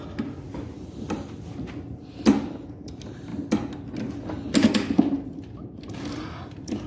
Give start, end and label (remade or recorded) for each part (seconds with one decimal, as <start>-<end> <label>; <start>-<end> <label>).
0.0-6.9 recorded